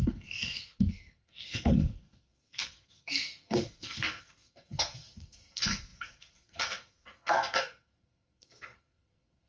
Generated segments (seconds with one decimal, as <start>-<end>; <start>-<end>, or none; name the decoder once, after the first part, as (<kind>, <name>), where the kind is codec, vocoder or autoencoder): 0.0-9.5 (codec, SNAC)

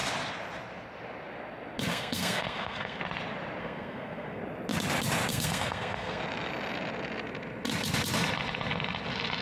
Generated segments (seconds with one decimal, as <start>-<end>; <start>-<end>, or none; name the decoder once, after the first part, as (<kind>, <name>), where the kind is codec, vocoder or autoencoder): 1.9-3.0 (codec, SNAC); 3.6-4.4; 5.3-6.2

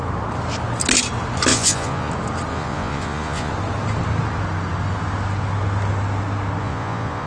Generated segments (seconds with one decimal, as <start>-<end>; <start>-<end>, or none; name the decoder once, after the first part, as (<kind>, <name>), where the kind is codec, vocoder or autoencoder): 1.5-2.1 (vocoder, Vocos); 2.5-3.5; 6.6-7.3